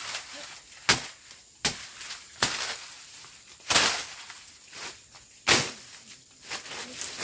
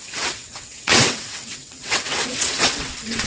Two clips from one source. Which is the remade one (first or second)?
second